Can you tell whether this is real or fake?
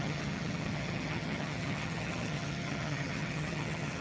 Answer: fake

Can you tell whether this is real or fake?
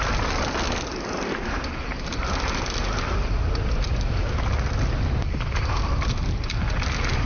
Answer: real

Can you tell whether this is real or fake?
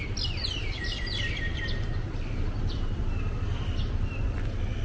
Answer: real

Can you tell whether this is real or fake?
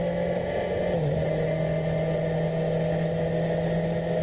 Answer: real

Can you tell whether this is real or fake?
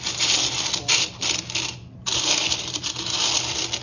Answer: real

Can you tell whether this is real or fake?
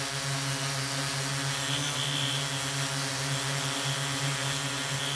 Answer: real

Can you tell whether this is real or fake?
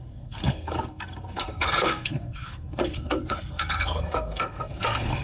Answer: fake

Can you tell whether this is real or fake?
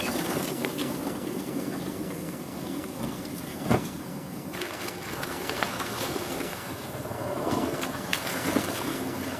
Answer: fake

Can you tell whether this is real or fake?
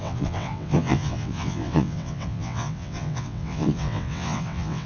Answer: fake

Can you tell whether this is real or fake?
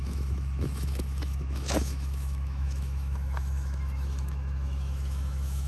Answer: fake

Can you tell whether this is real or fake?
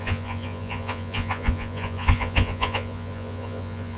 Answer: fake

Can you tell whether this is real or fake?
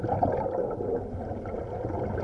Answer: real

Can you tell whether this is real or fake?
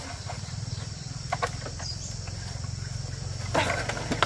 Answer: real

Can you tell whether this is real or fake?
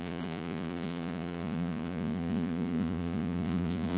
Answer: fake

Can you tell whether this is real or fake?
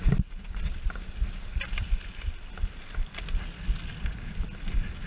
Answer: real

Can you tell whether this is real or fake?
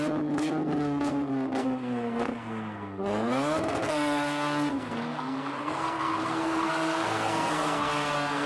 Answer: fake